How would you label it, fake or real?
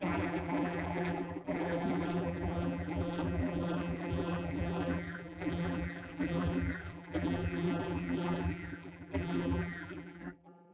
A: fake